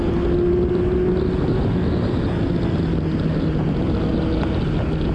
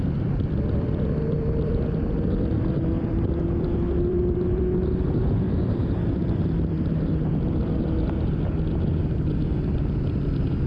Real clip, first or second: first